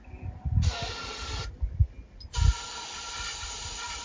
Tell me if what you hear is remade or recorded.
recorded